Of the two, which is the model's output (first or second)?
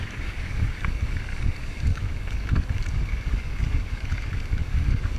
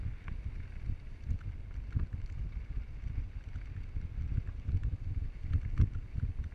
first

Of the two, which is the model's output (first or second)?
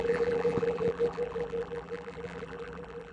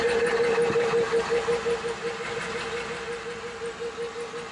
first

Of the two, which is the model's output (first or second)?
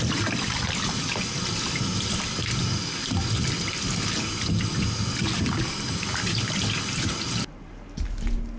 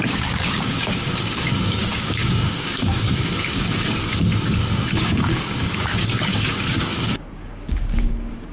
second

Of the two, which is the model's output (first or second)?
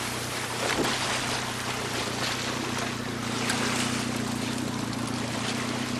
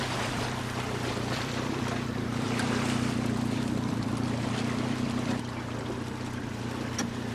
second